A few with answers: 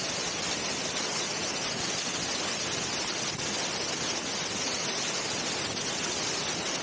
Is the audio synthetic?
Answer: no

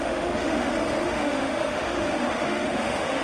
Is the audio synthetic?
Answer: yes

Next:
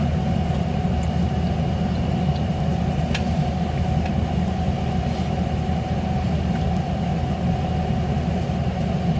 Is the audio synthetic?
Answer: no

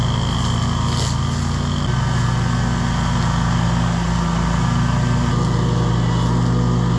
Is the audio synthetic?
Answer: no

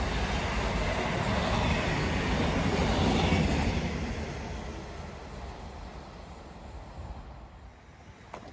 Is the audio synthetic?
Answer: no